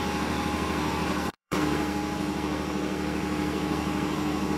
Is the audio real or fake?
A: fake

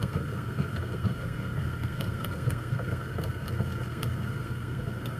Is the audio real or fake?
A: fake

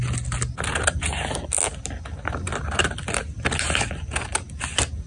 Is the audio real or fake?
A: real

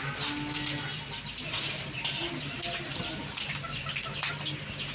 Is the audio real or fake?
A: real